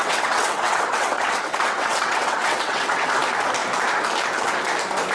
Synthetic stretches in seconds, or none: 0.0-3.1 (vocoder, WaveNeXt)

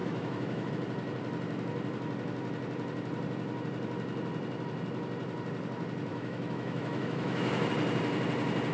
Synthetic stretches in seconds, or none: 0.0-0.7 (autoencoder, DAC-VAE); 6.1-7.7

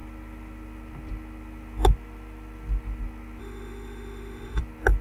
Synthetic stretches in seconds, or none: 3.4-4.6 (autoencoder, DAC-VAE)

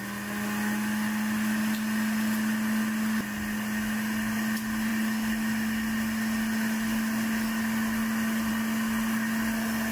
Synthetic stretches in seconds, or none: none

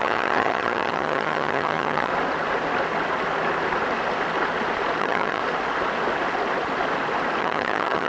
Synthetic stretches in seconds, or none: 0.0-2.1 (vocoder, HiFi-GAN); 5.0-5.4; 7.4-8.1

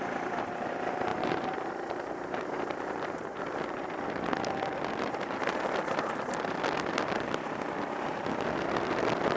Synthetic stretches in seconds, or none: 1.1-3.4 (vocoder, BigVGAN v2)

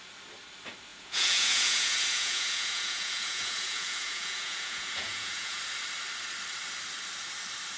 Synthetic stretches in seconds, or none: 0.9-5.6 (vocoder, Vocos)

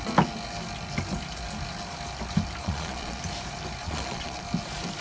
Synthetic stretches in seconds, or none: 2.6-3.2 (vocoder, Vocos); 3.8-4.4